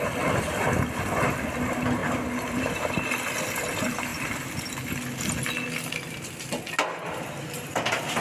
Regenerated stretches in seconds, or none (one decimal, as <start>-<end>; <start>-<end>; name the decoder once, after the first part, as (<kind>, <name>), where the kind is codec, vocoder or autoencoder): 2.0-2.8 (vocoder, BigVGAN v2)